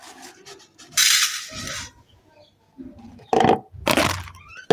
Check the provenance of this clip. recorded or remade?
recorded